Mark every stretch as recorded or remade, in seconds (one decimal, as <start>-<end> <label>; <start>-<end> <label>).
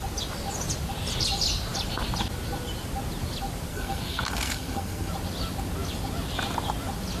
0.0-3.7 recorded; 3.7-5.1 remade; 5.1-7.2 recorded